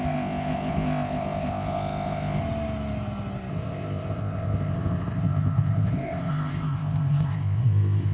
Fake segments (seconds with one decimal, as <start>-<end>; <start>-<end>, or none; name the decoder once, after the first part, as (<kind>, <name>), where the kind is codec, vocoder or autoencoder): 0.0-2.4 (codec, ZipCodec); 3.5-8.1